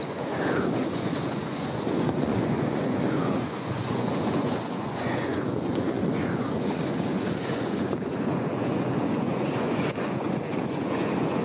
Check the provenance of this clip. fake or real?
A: fake